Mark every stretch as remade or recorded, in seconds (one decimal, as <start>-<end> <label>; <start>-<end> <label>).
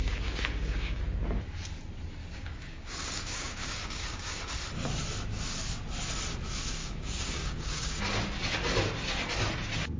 0.0-1.0 remade; 1.0-2.2 recorded; 2.2-4.4 remade; 4.4-6.8 recorded; 6.8-8.0 remade; 8.0-10.0 recorded